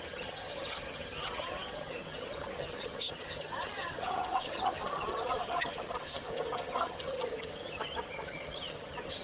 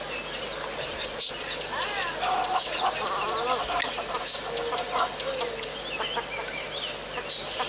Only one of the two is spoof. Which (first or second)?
first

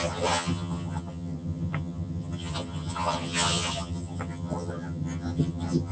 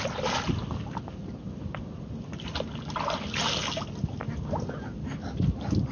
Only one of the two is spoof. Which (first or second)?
first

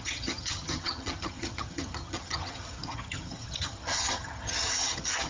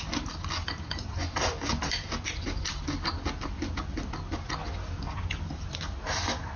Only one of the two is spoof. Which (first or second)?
first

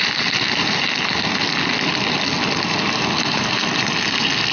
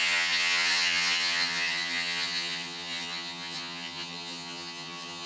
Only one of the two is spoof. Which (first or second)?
second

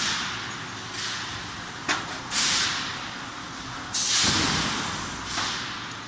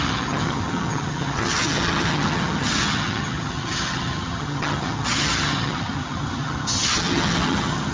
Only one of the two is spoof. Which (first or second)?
second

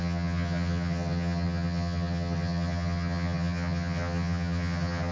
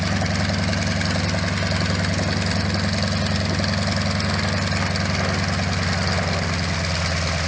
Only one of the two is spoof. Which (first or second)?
first